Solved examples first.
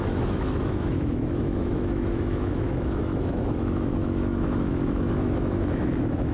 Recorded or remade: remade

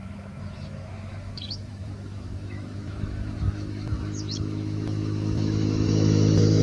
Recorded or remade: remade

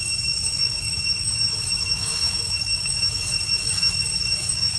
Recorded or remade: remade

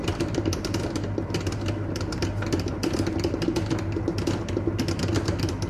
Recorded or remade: recorded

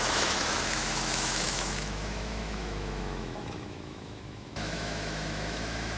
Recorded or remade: remade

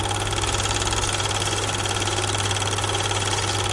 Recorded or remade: recorded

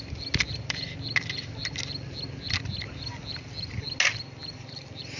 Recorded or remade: recorded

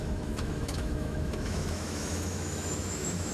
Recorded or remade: remade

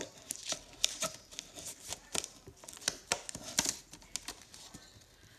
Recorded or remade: recorded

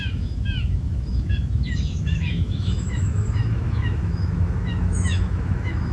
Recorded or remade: remade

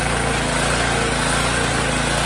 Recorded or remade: recorded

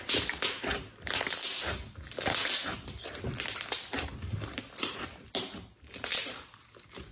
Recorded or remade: recorded